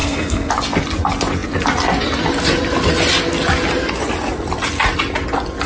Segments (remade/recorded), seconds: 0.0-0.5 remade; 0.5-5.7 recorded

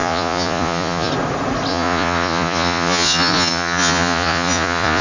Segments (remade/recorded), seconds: 0.0-1.1 remade; 1.1-1.7 recorded; 1.7-5.0 remade